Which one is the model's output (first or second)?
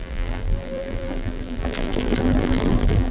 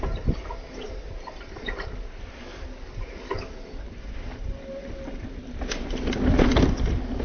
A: first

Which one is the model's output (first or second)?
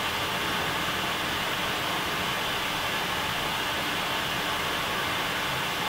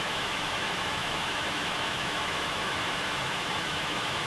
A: second